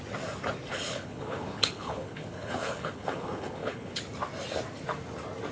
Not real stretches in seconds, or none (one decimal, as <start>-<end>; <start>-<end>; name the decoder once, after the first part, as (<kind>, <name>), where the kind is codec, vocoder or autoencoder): 0.7-4.0 (codec, HILCodec)